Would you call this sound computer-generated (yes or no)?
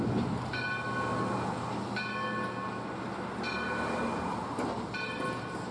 no